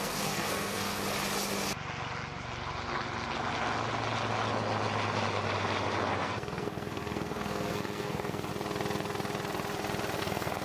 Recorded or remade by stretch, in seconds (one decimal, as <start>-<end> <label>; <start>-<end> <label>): 0.0-1.0 remade; 1.0-6.1 recorded; 6.1-8.5 remade; 8.5-10.2 recorded; 10.2-10.6 remade

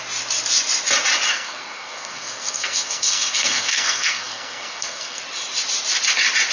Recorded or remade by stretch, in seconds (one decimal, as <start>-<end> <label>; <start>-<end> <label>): 0.0-1.3 recorded; 1.3-5.2 remade; 5.2-6.5 recorded

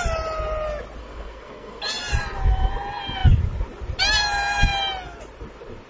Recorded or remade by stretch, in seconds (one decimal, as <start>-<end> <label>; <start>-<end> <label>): 0.0-1.0 recorded; 1.0-1.8 remade; 1.8-5.9 recorded

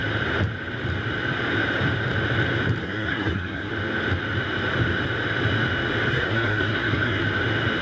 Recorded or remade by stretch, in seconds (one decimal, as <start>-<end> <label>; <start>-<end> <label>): 0.0-2.8 recorded; 2.8-3.7 remade; 3.7-6.1 recorded; 6.1-7.2 remade; 7.2-7.8 recorded